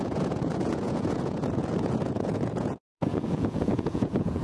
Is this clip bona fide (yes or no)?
no